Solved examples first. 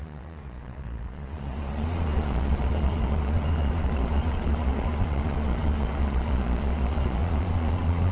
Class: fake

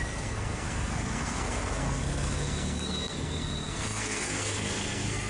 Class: fake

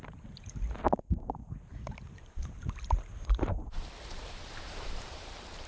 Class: fake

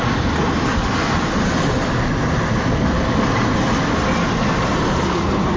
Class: real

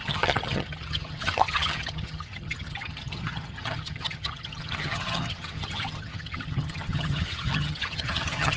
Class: fake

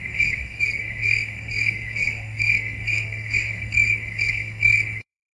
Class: fake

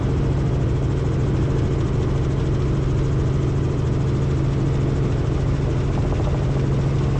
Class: real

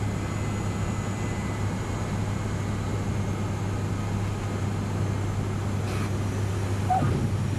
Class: real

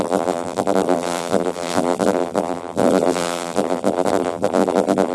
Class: fake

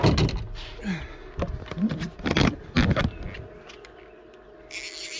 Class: real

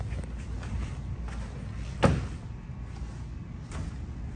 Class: real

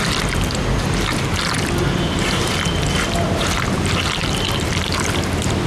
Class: fake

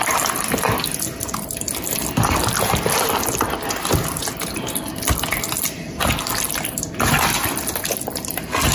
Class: real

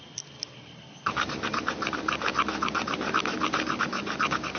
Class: real